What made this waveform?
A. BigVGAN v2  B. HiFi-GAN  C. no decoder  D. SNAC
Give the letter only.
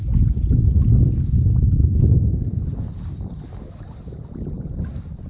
C